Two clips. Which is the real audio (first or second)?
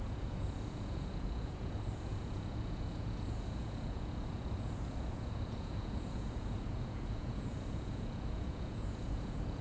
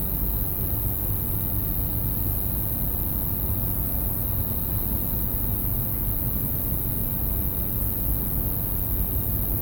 second